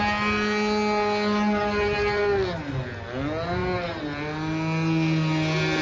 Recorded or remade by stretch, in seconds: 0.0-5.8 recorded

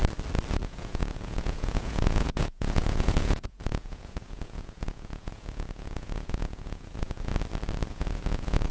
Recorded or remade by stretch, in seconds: 0.0-0.5 recorded; 0.5-7.3 remade; 7.3-7.9 recorded; 7.9-8.7 remade

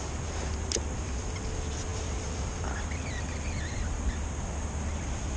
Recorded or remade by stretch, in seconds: 0.0-5.4 recorded

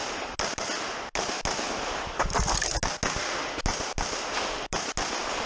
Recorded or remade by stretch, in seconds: 0.0-5.5 recorded

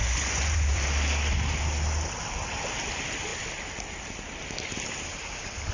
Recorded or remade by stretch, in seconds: 0.0-0.8 remade; 0.8-5.7 recorded

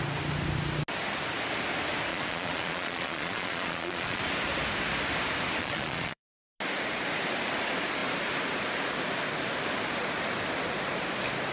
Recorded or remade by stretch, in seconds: 0.0-2.1 recorded; 2.1-4.2 remade; 4.2-5.6 recorded; 5.6-6.3 remade; 6.3-11.5 recorded

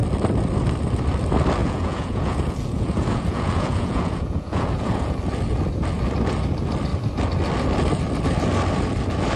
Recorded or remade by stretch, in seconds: 0.0-1.6 recorded; 1.6-5.2 remade; 5.2-9.4 recorded

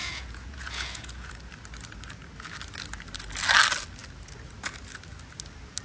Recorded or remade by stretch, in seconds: 0.0-1.3 remade; 1.3-5.8 recorded